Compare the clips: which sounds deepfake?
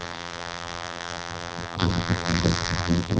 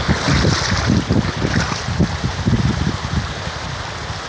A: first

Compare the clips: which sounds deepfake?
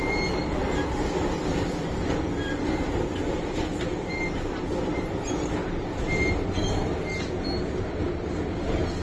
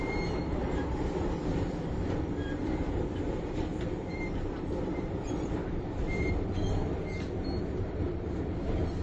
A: second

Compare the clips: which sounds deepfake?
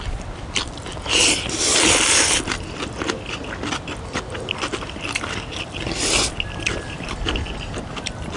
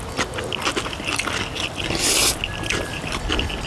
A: first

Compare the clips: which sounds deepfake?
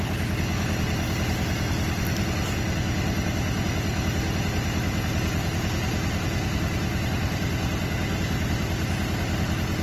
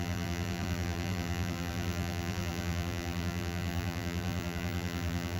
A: second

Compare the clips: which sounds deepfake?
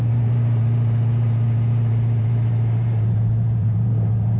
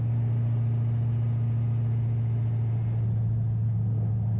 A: first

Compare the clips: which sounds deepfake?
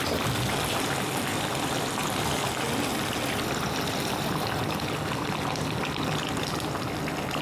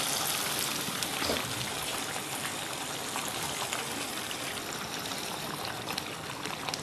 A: second